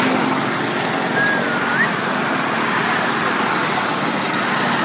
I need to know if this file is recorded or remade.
recorded